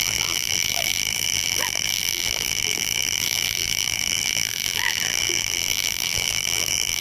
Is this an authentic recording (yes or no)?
no